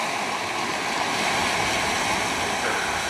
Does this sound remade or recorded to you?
recorded